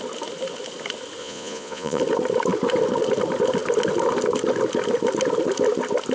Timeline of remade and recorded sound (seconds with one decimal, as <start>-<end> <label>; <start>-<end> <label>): 0.0-1.2 recorded; 1.2-2.0 remade; 2.0-6.1 recorded